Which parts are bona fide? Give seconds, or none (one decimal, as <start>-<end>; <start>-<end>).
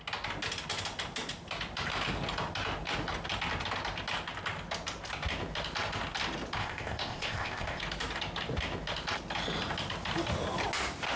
0.0-6.6; 7.8-11.2